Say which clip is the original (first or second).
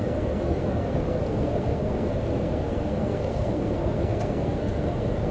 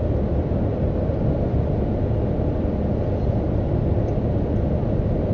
second